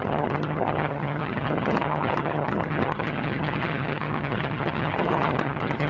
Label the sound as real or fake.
fake